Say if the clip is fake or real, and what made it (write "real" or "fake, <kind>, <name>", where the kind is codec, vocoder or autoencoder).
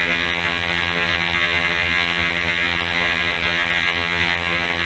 fake, vocoder, HiFi-GAN